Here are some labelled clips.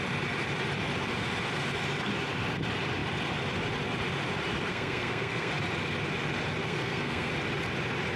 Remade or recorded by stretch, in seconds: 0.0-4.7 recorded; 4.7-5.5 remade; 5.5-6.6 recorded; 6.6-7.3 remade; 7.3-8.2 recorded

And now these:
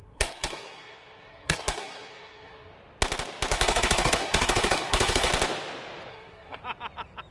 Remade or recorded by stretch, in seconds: 0.0-2.7 remade; 2.7-3.5 recorded; 3.5-5.3 remade; 5.3-6.1 recorded; 6.1-6.6 remade; 6.6-7.3 recorded

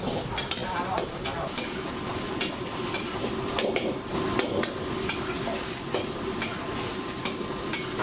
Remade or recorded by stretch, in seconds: 0.0-8.0 remade

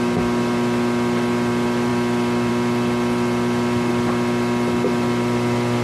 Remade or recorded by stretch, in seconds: 0.0-5.8 recorded

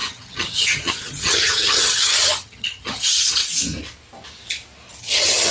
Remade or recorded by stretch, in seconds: 0.0-3.4 remade; 3.4-5.0 recorded; 5.0-5.5 remade

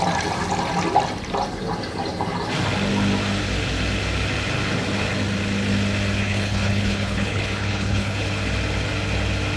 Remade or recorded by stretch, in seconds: 0.0-6.2 recorded; 6.2-8.2 remade; 8.2-9.6 recorded

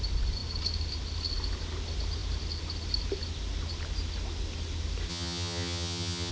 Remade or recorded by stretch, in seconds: 0.0-5.1 recorded; 5.1-6.3 remade